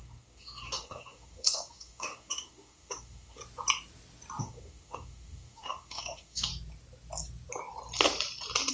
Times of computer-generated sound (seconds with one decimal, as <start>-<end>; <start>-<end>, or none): 0.0-3.4; 4.4-6.5